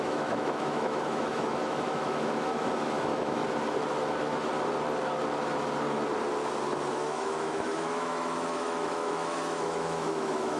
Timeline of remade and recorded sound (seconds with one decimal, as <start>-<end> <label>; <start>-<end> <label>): 0.0-3.4 remade; 3.4-6.9 recorded; 6.9-10.6 remade